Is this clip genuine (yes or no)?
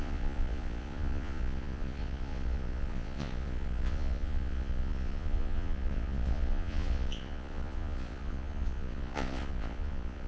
no